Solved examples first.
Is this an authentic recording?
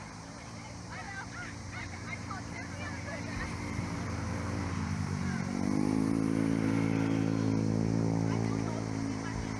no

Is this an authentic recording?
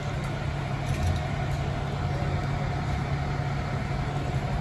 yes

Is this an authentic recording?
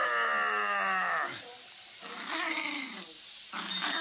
yes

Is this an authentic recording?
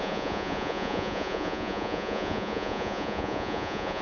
no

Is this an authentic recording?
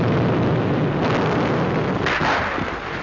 yes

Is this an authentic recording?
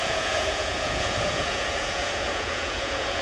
no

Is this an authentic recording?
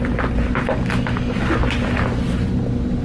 yes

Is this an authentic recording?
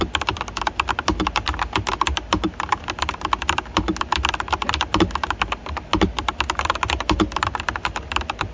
yes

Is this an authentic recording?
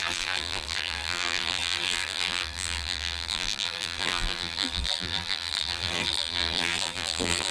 no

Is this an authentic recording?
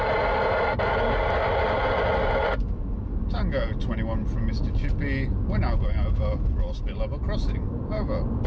yes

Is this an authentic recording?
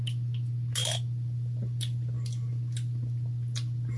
yes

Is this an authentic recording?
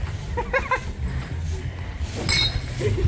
yes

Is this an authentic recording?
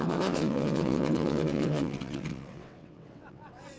no